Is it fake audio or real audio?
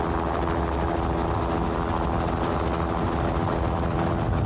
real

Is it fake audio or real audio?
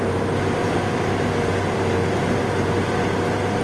real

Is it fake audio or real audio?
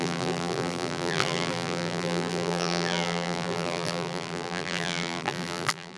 fake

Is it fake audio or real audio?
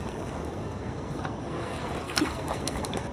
fake